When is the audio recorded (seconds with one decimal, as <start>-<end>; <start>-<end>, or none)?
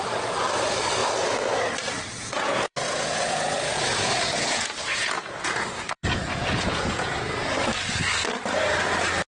0.0-2.2; 7.1-9.3